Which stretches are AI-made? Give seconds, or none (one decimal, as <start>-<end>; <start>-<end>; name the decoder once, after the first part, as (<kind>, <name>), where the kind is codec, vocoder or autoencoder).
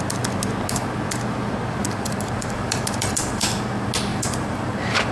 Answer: 1.8-3.5 (vocoder, BigVGAN v2); 4.1-5.1